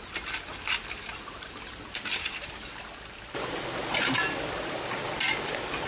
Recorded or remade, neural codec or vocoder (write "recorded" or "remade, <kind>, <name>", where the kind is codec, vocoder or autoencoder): recorded